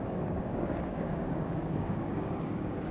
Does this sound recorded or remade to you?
remade